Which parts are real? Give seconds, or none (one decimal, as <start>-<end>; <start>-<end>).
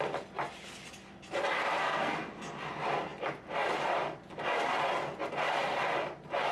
0.0-1.6; 2.2-6.5